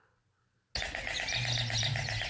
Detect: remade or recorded recorded